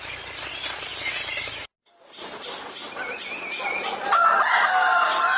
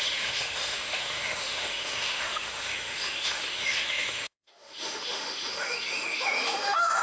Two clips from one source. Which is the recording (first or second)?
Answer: first